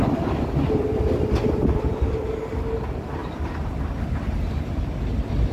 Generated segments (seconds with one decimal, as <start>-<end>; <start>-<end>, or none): none